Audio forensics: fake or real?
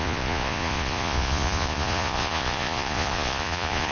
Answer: fake